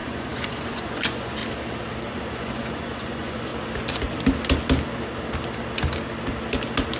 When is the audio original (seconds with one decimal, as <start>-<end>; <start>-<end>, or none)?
1.4-2.1; 3.5-7.0